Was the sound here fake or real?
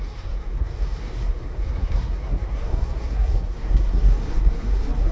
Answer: fake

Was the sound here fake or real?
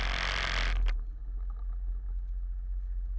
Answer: real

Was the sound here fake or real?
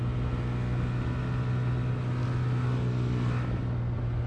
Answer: real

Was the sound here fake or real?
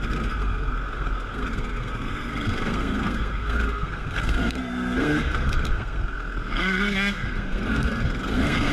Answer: fake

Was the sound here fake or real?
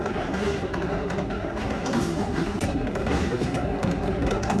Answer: fake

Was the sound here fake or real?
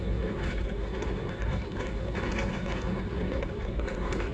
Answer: fake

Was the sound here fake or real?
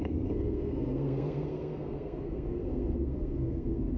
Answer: fake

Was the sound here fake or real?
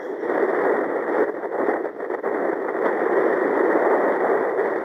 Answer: real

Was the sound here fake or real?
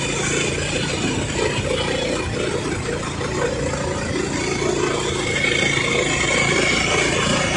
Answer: real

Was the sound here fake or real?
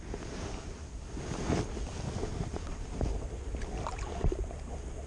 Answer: real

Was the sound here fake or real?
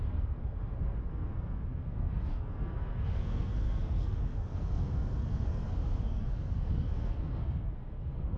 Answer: fake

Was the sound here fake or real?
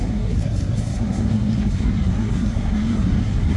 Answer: fake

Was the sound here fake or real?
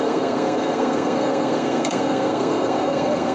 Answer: fake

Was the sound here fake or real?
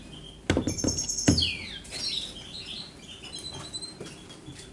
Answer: real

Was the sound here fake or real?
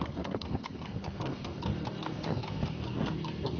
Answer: fake